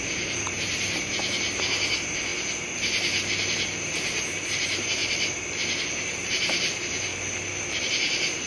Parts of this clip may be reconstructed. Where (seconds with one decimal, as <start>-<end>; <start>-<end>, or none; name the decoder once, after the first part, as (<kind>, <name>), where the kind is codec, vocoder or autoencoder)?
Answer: 0.0-2.3 (vocoder, BigVGAN v2); 4.2-5.0; 5.8-7.1; 7.7-8.5